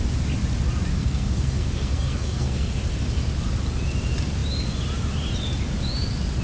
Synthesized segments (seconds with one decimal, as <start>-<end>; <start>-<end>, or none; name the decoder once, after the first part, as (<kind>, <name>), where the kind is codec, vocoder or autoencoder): 0.9-2.7 (codec, SNAC)